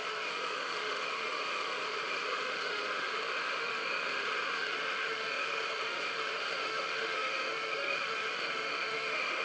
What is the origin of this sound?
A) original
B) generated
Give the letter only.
B